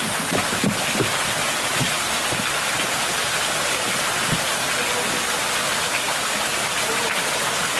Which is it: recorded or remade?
recorded